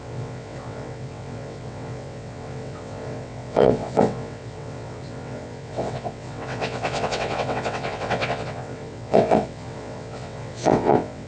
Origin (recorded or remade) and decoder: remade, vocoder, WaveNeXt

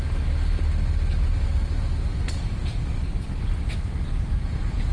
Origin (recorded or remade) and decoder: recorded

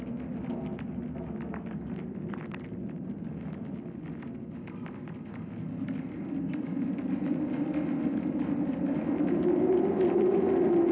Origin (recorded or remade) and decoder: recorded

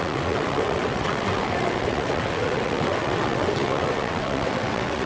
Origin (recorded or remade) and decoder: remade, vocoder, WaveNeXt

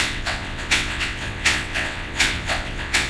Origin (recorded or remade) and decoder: remade, vocoder, WaveNeXt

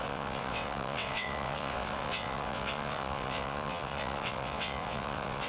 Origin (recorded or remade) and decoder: remade, vocoder, WaveNeXt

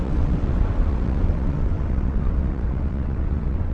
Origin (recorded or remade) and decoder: remade, vocoder, WaveNeXt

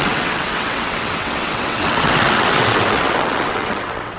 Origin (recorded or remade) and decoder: remade, vocoder, WaveNeXt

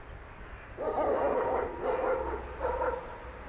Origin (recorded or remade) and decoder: recorded